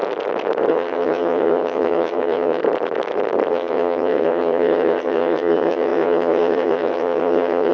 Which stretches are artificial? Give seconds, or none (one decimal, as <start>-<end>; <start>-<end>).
0.7-2.6; 3.5-7.7